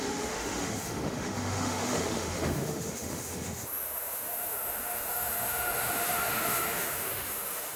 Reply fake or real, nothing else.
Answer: fake